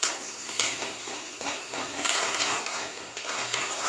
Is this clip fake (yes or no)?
yes